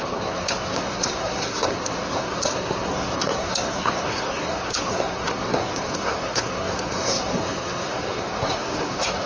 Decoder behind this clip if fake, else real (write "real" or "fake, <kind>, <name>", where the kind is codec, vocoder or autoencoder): fake, codec, SNAC